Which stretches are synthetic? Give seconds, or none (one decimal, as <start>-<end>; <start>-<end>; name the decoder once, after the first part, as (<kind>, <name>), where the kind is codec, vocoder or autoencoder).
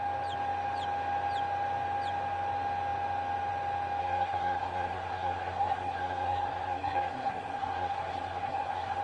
4.0-9.0 (codec, SNAC)